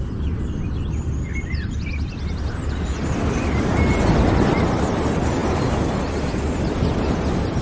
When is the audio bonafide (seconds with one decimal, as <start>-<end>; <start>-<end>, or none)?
0.0-7.6